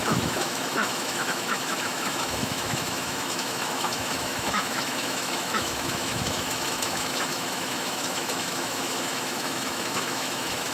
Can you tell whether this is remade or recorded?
remade